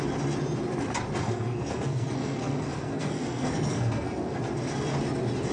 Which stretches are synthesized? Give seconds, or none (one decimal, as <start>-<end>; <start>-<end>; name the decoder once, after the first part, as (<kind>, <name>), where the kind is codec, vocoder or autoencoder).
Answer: 1.2-4.4 (codec, SNAC)